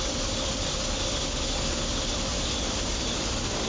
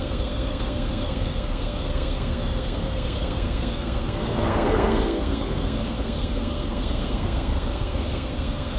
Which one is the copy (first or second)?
second